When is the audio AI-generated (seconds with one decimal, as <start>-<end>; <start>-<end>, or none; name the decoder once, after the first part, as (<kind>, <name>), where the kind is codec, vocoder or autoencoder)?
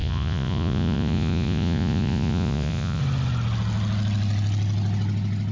0.0-3.0 (vocoder, Vocos)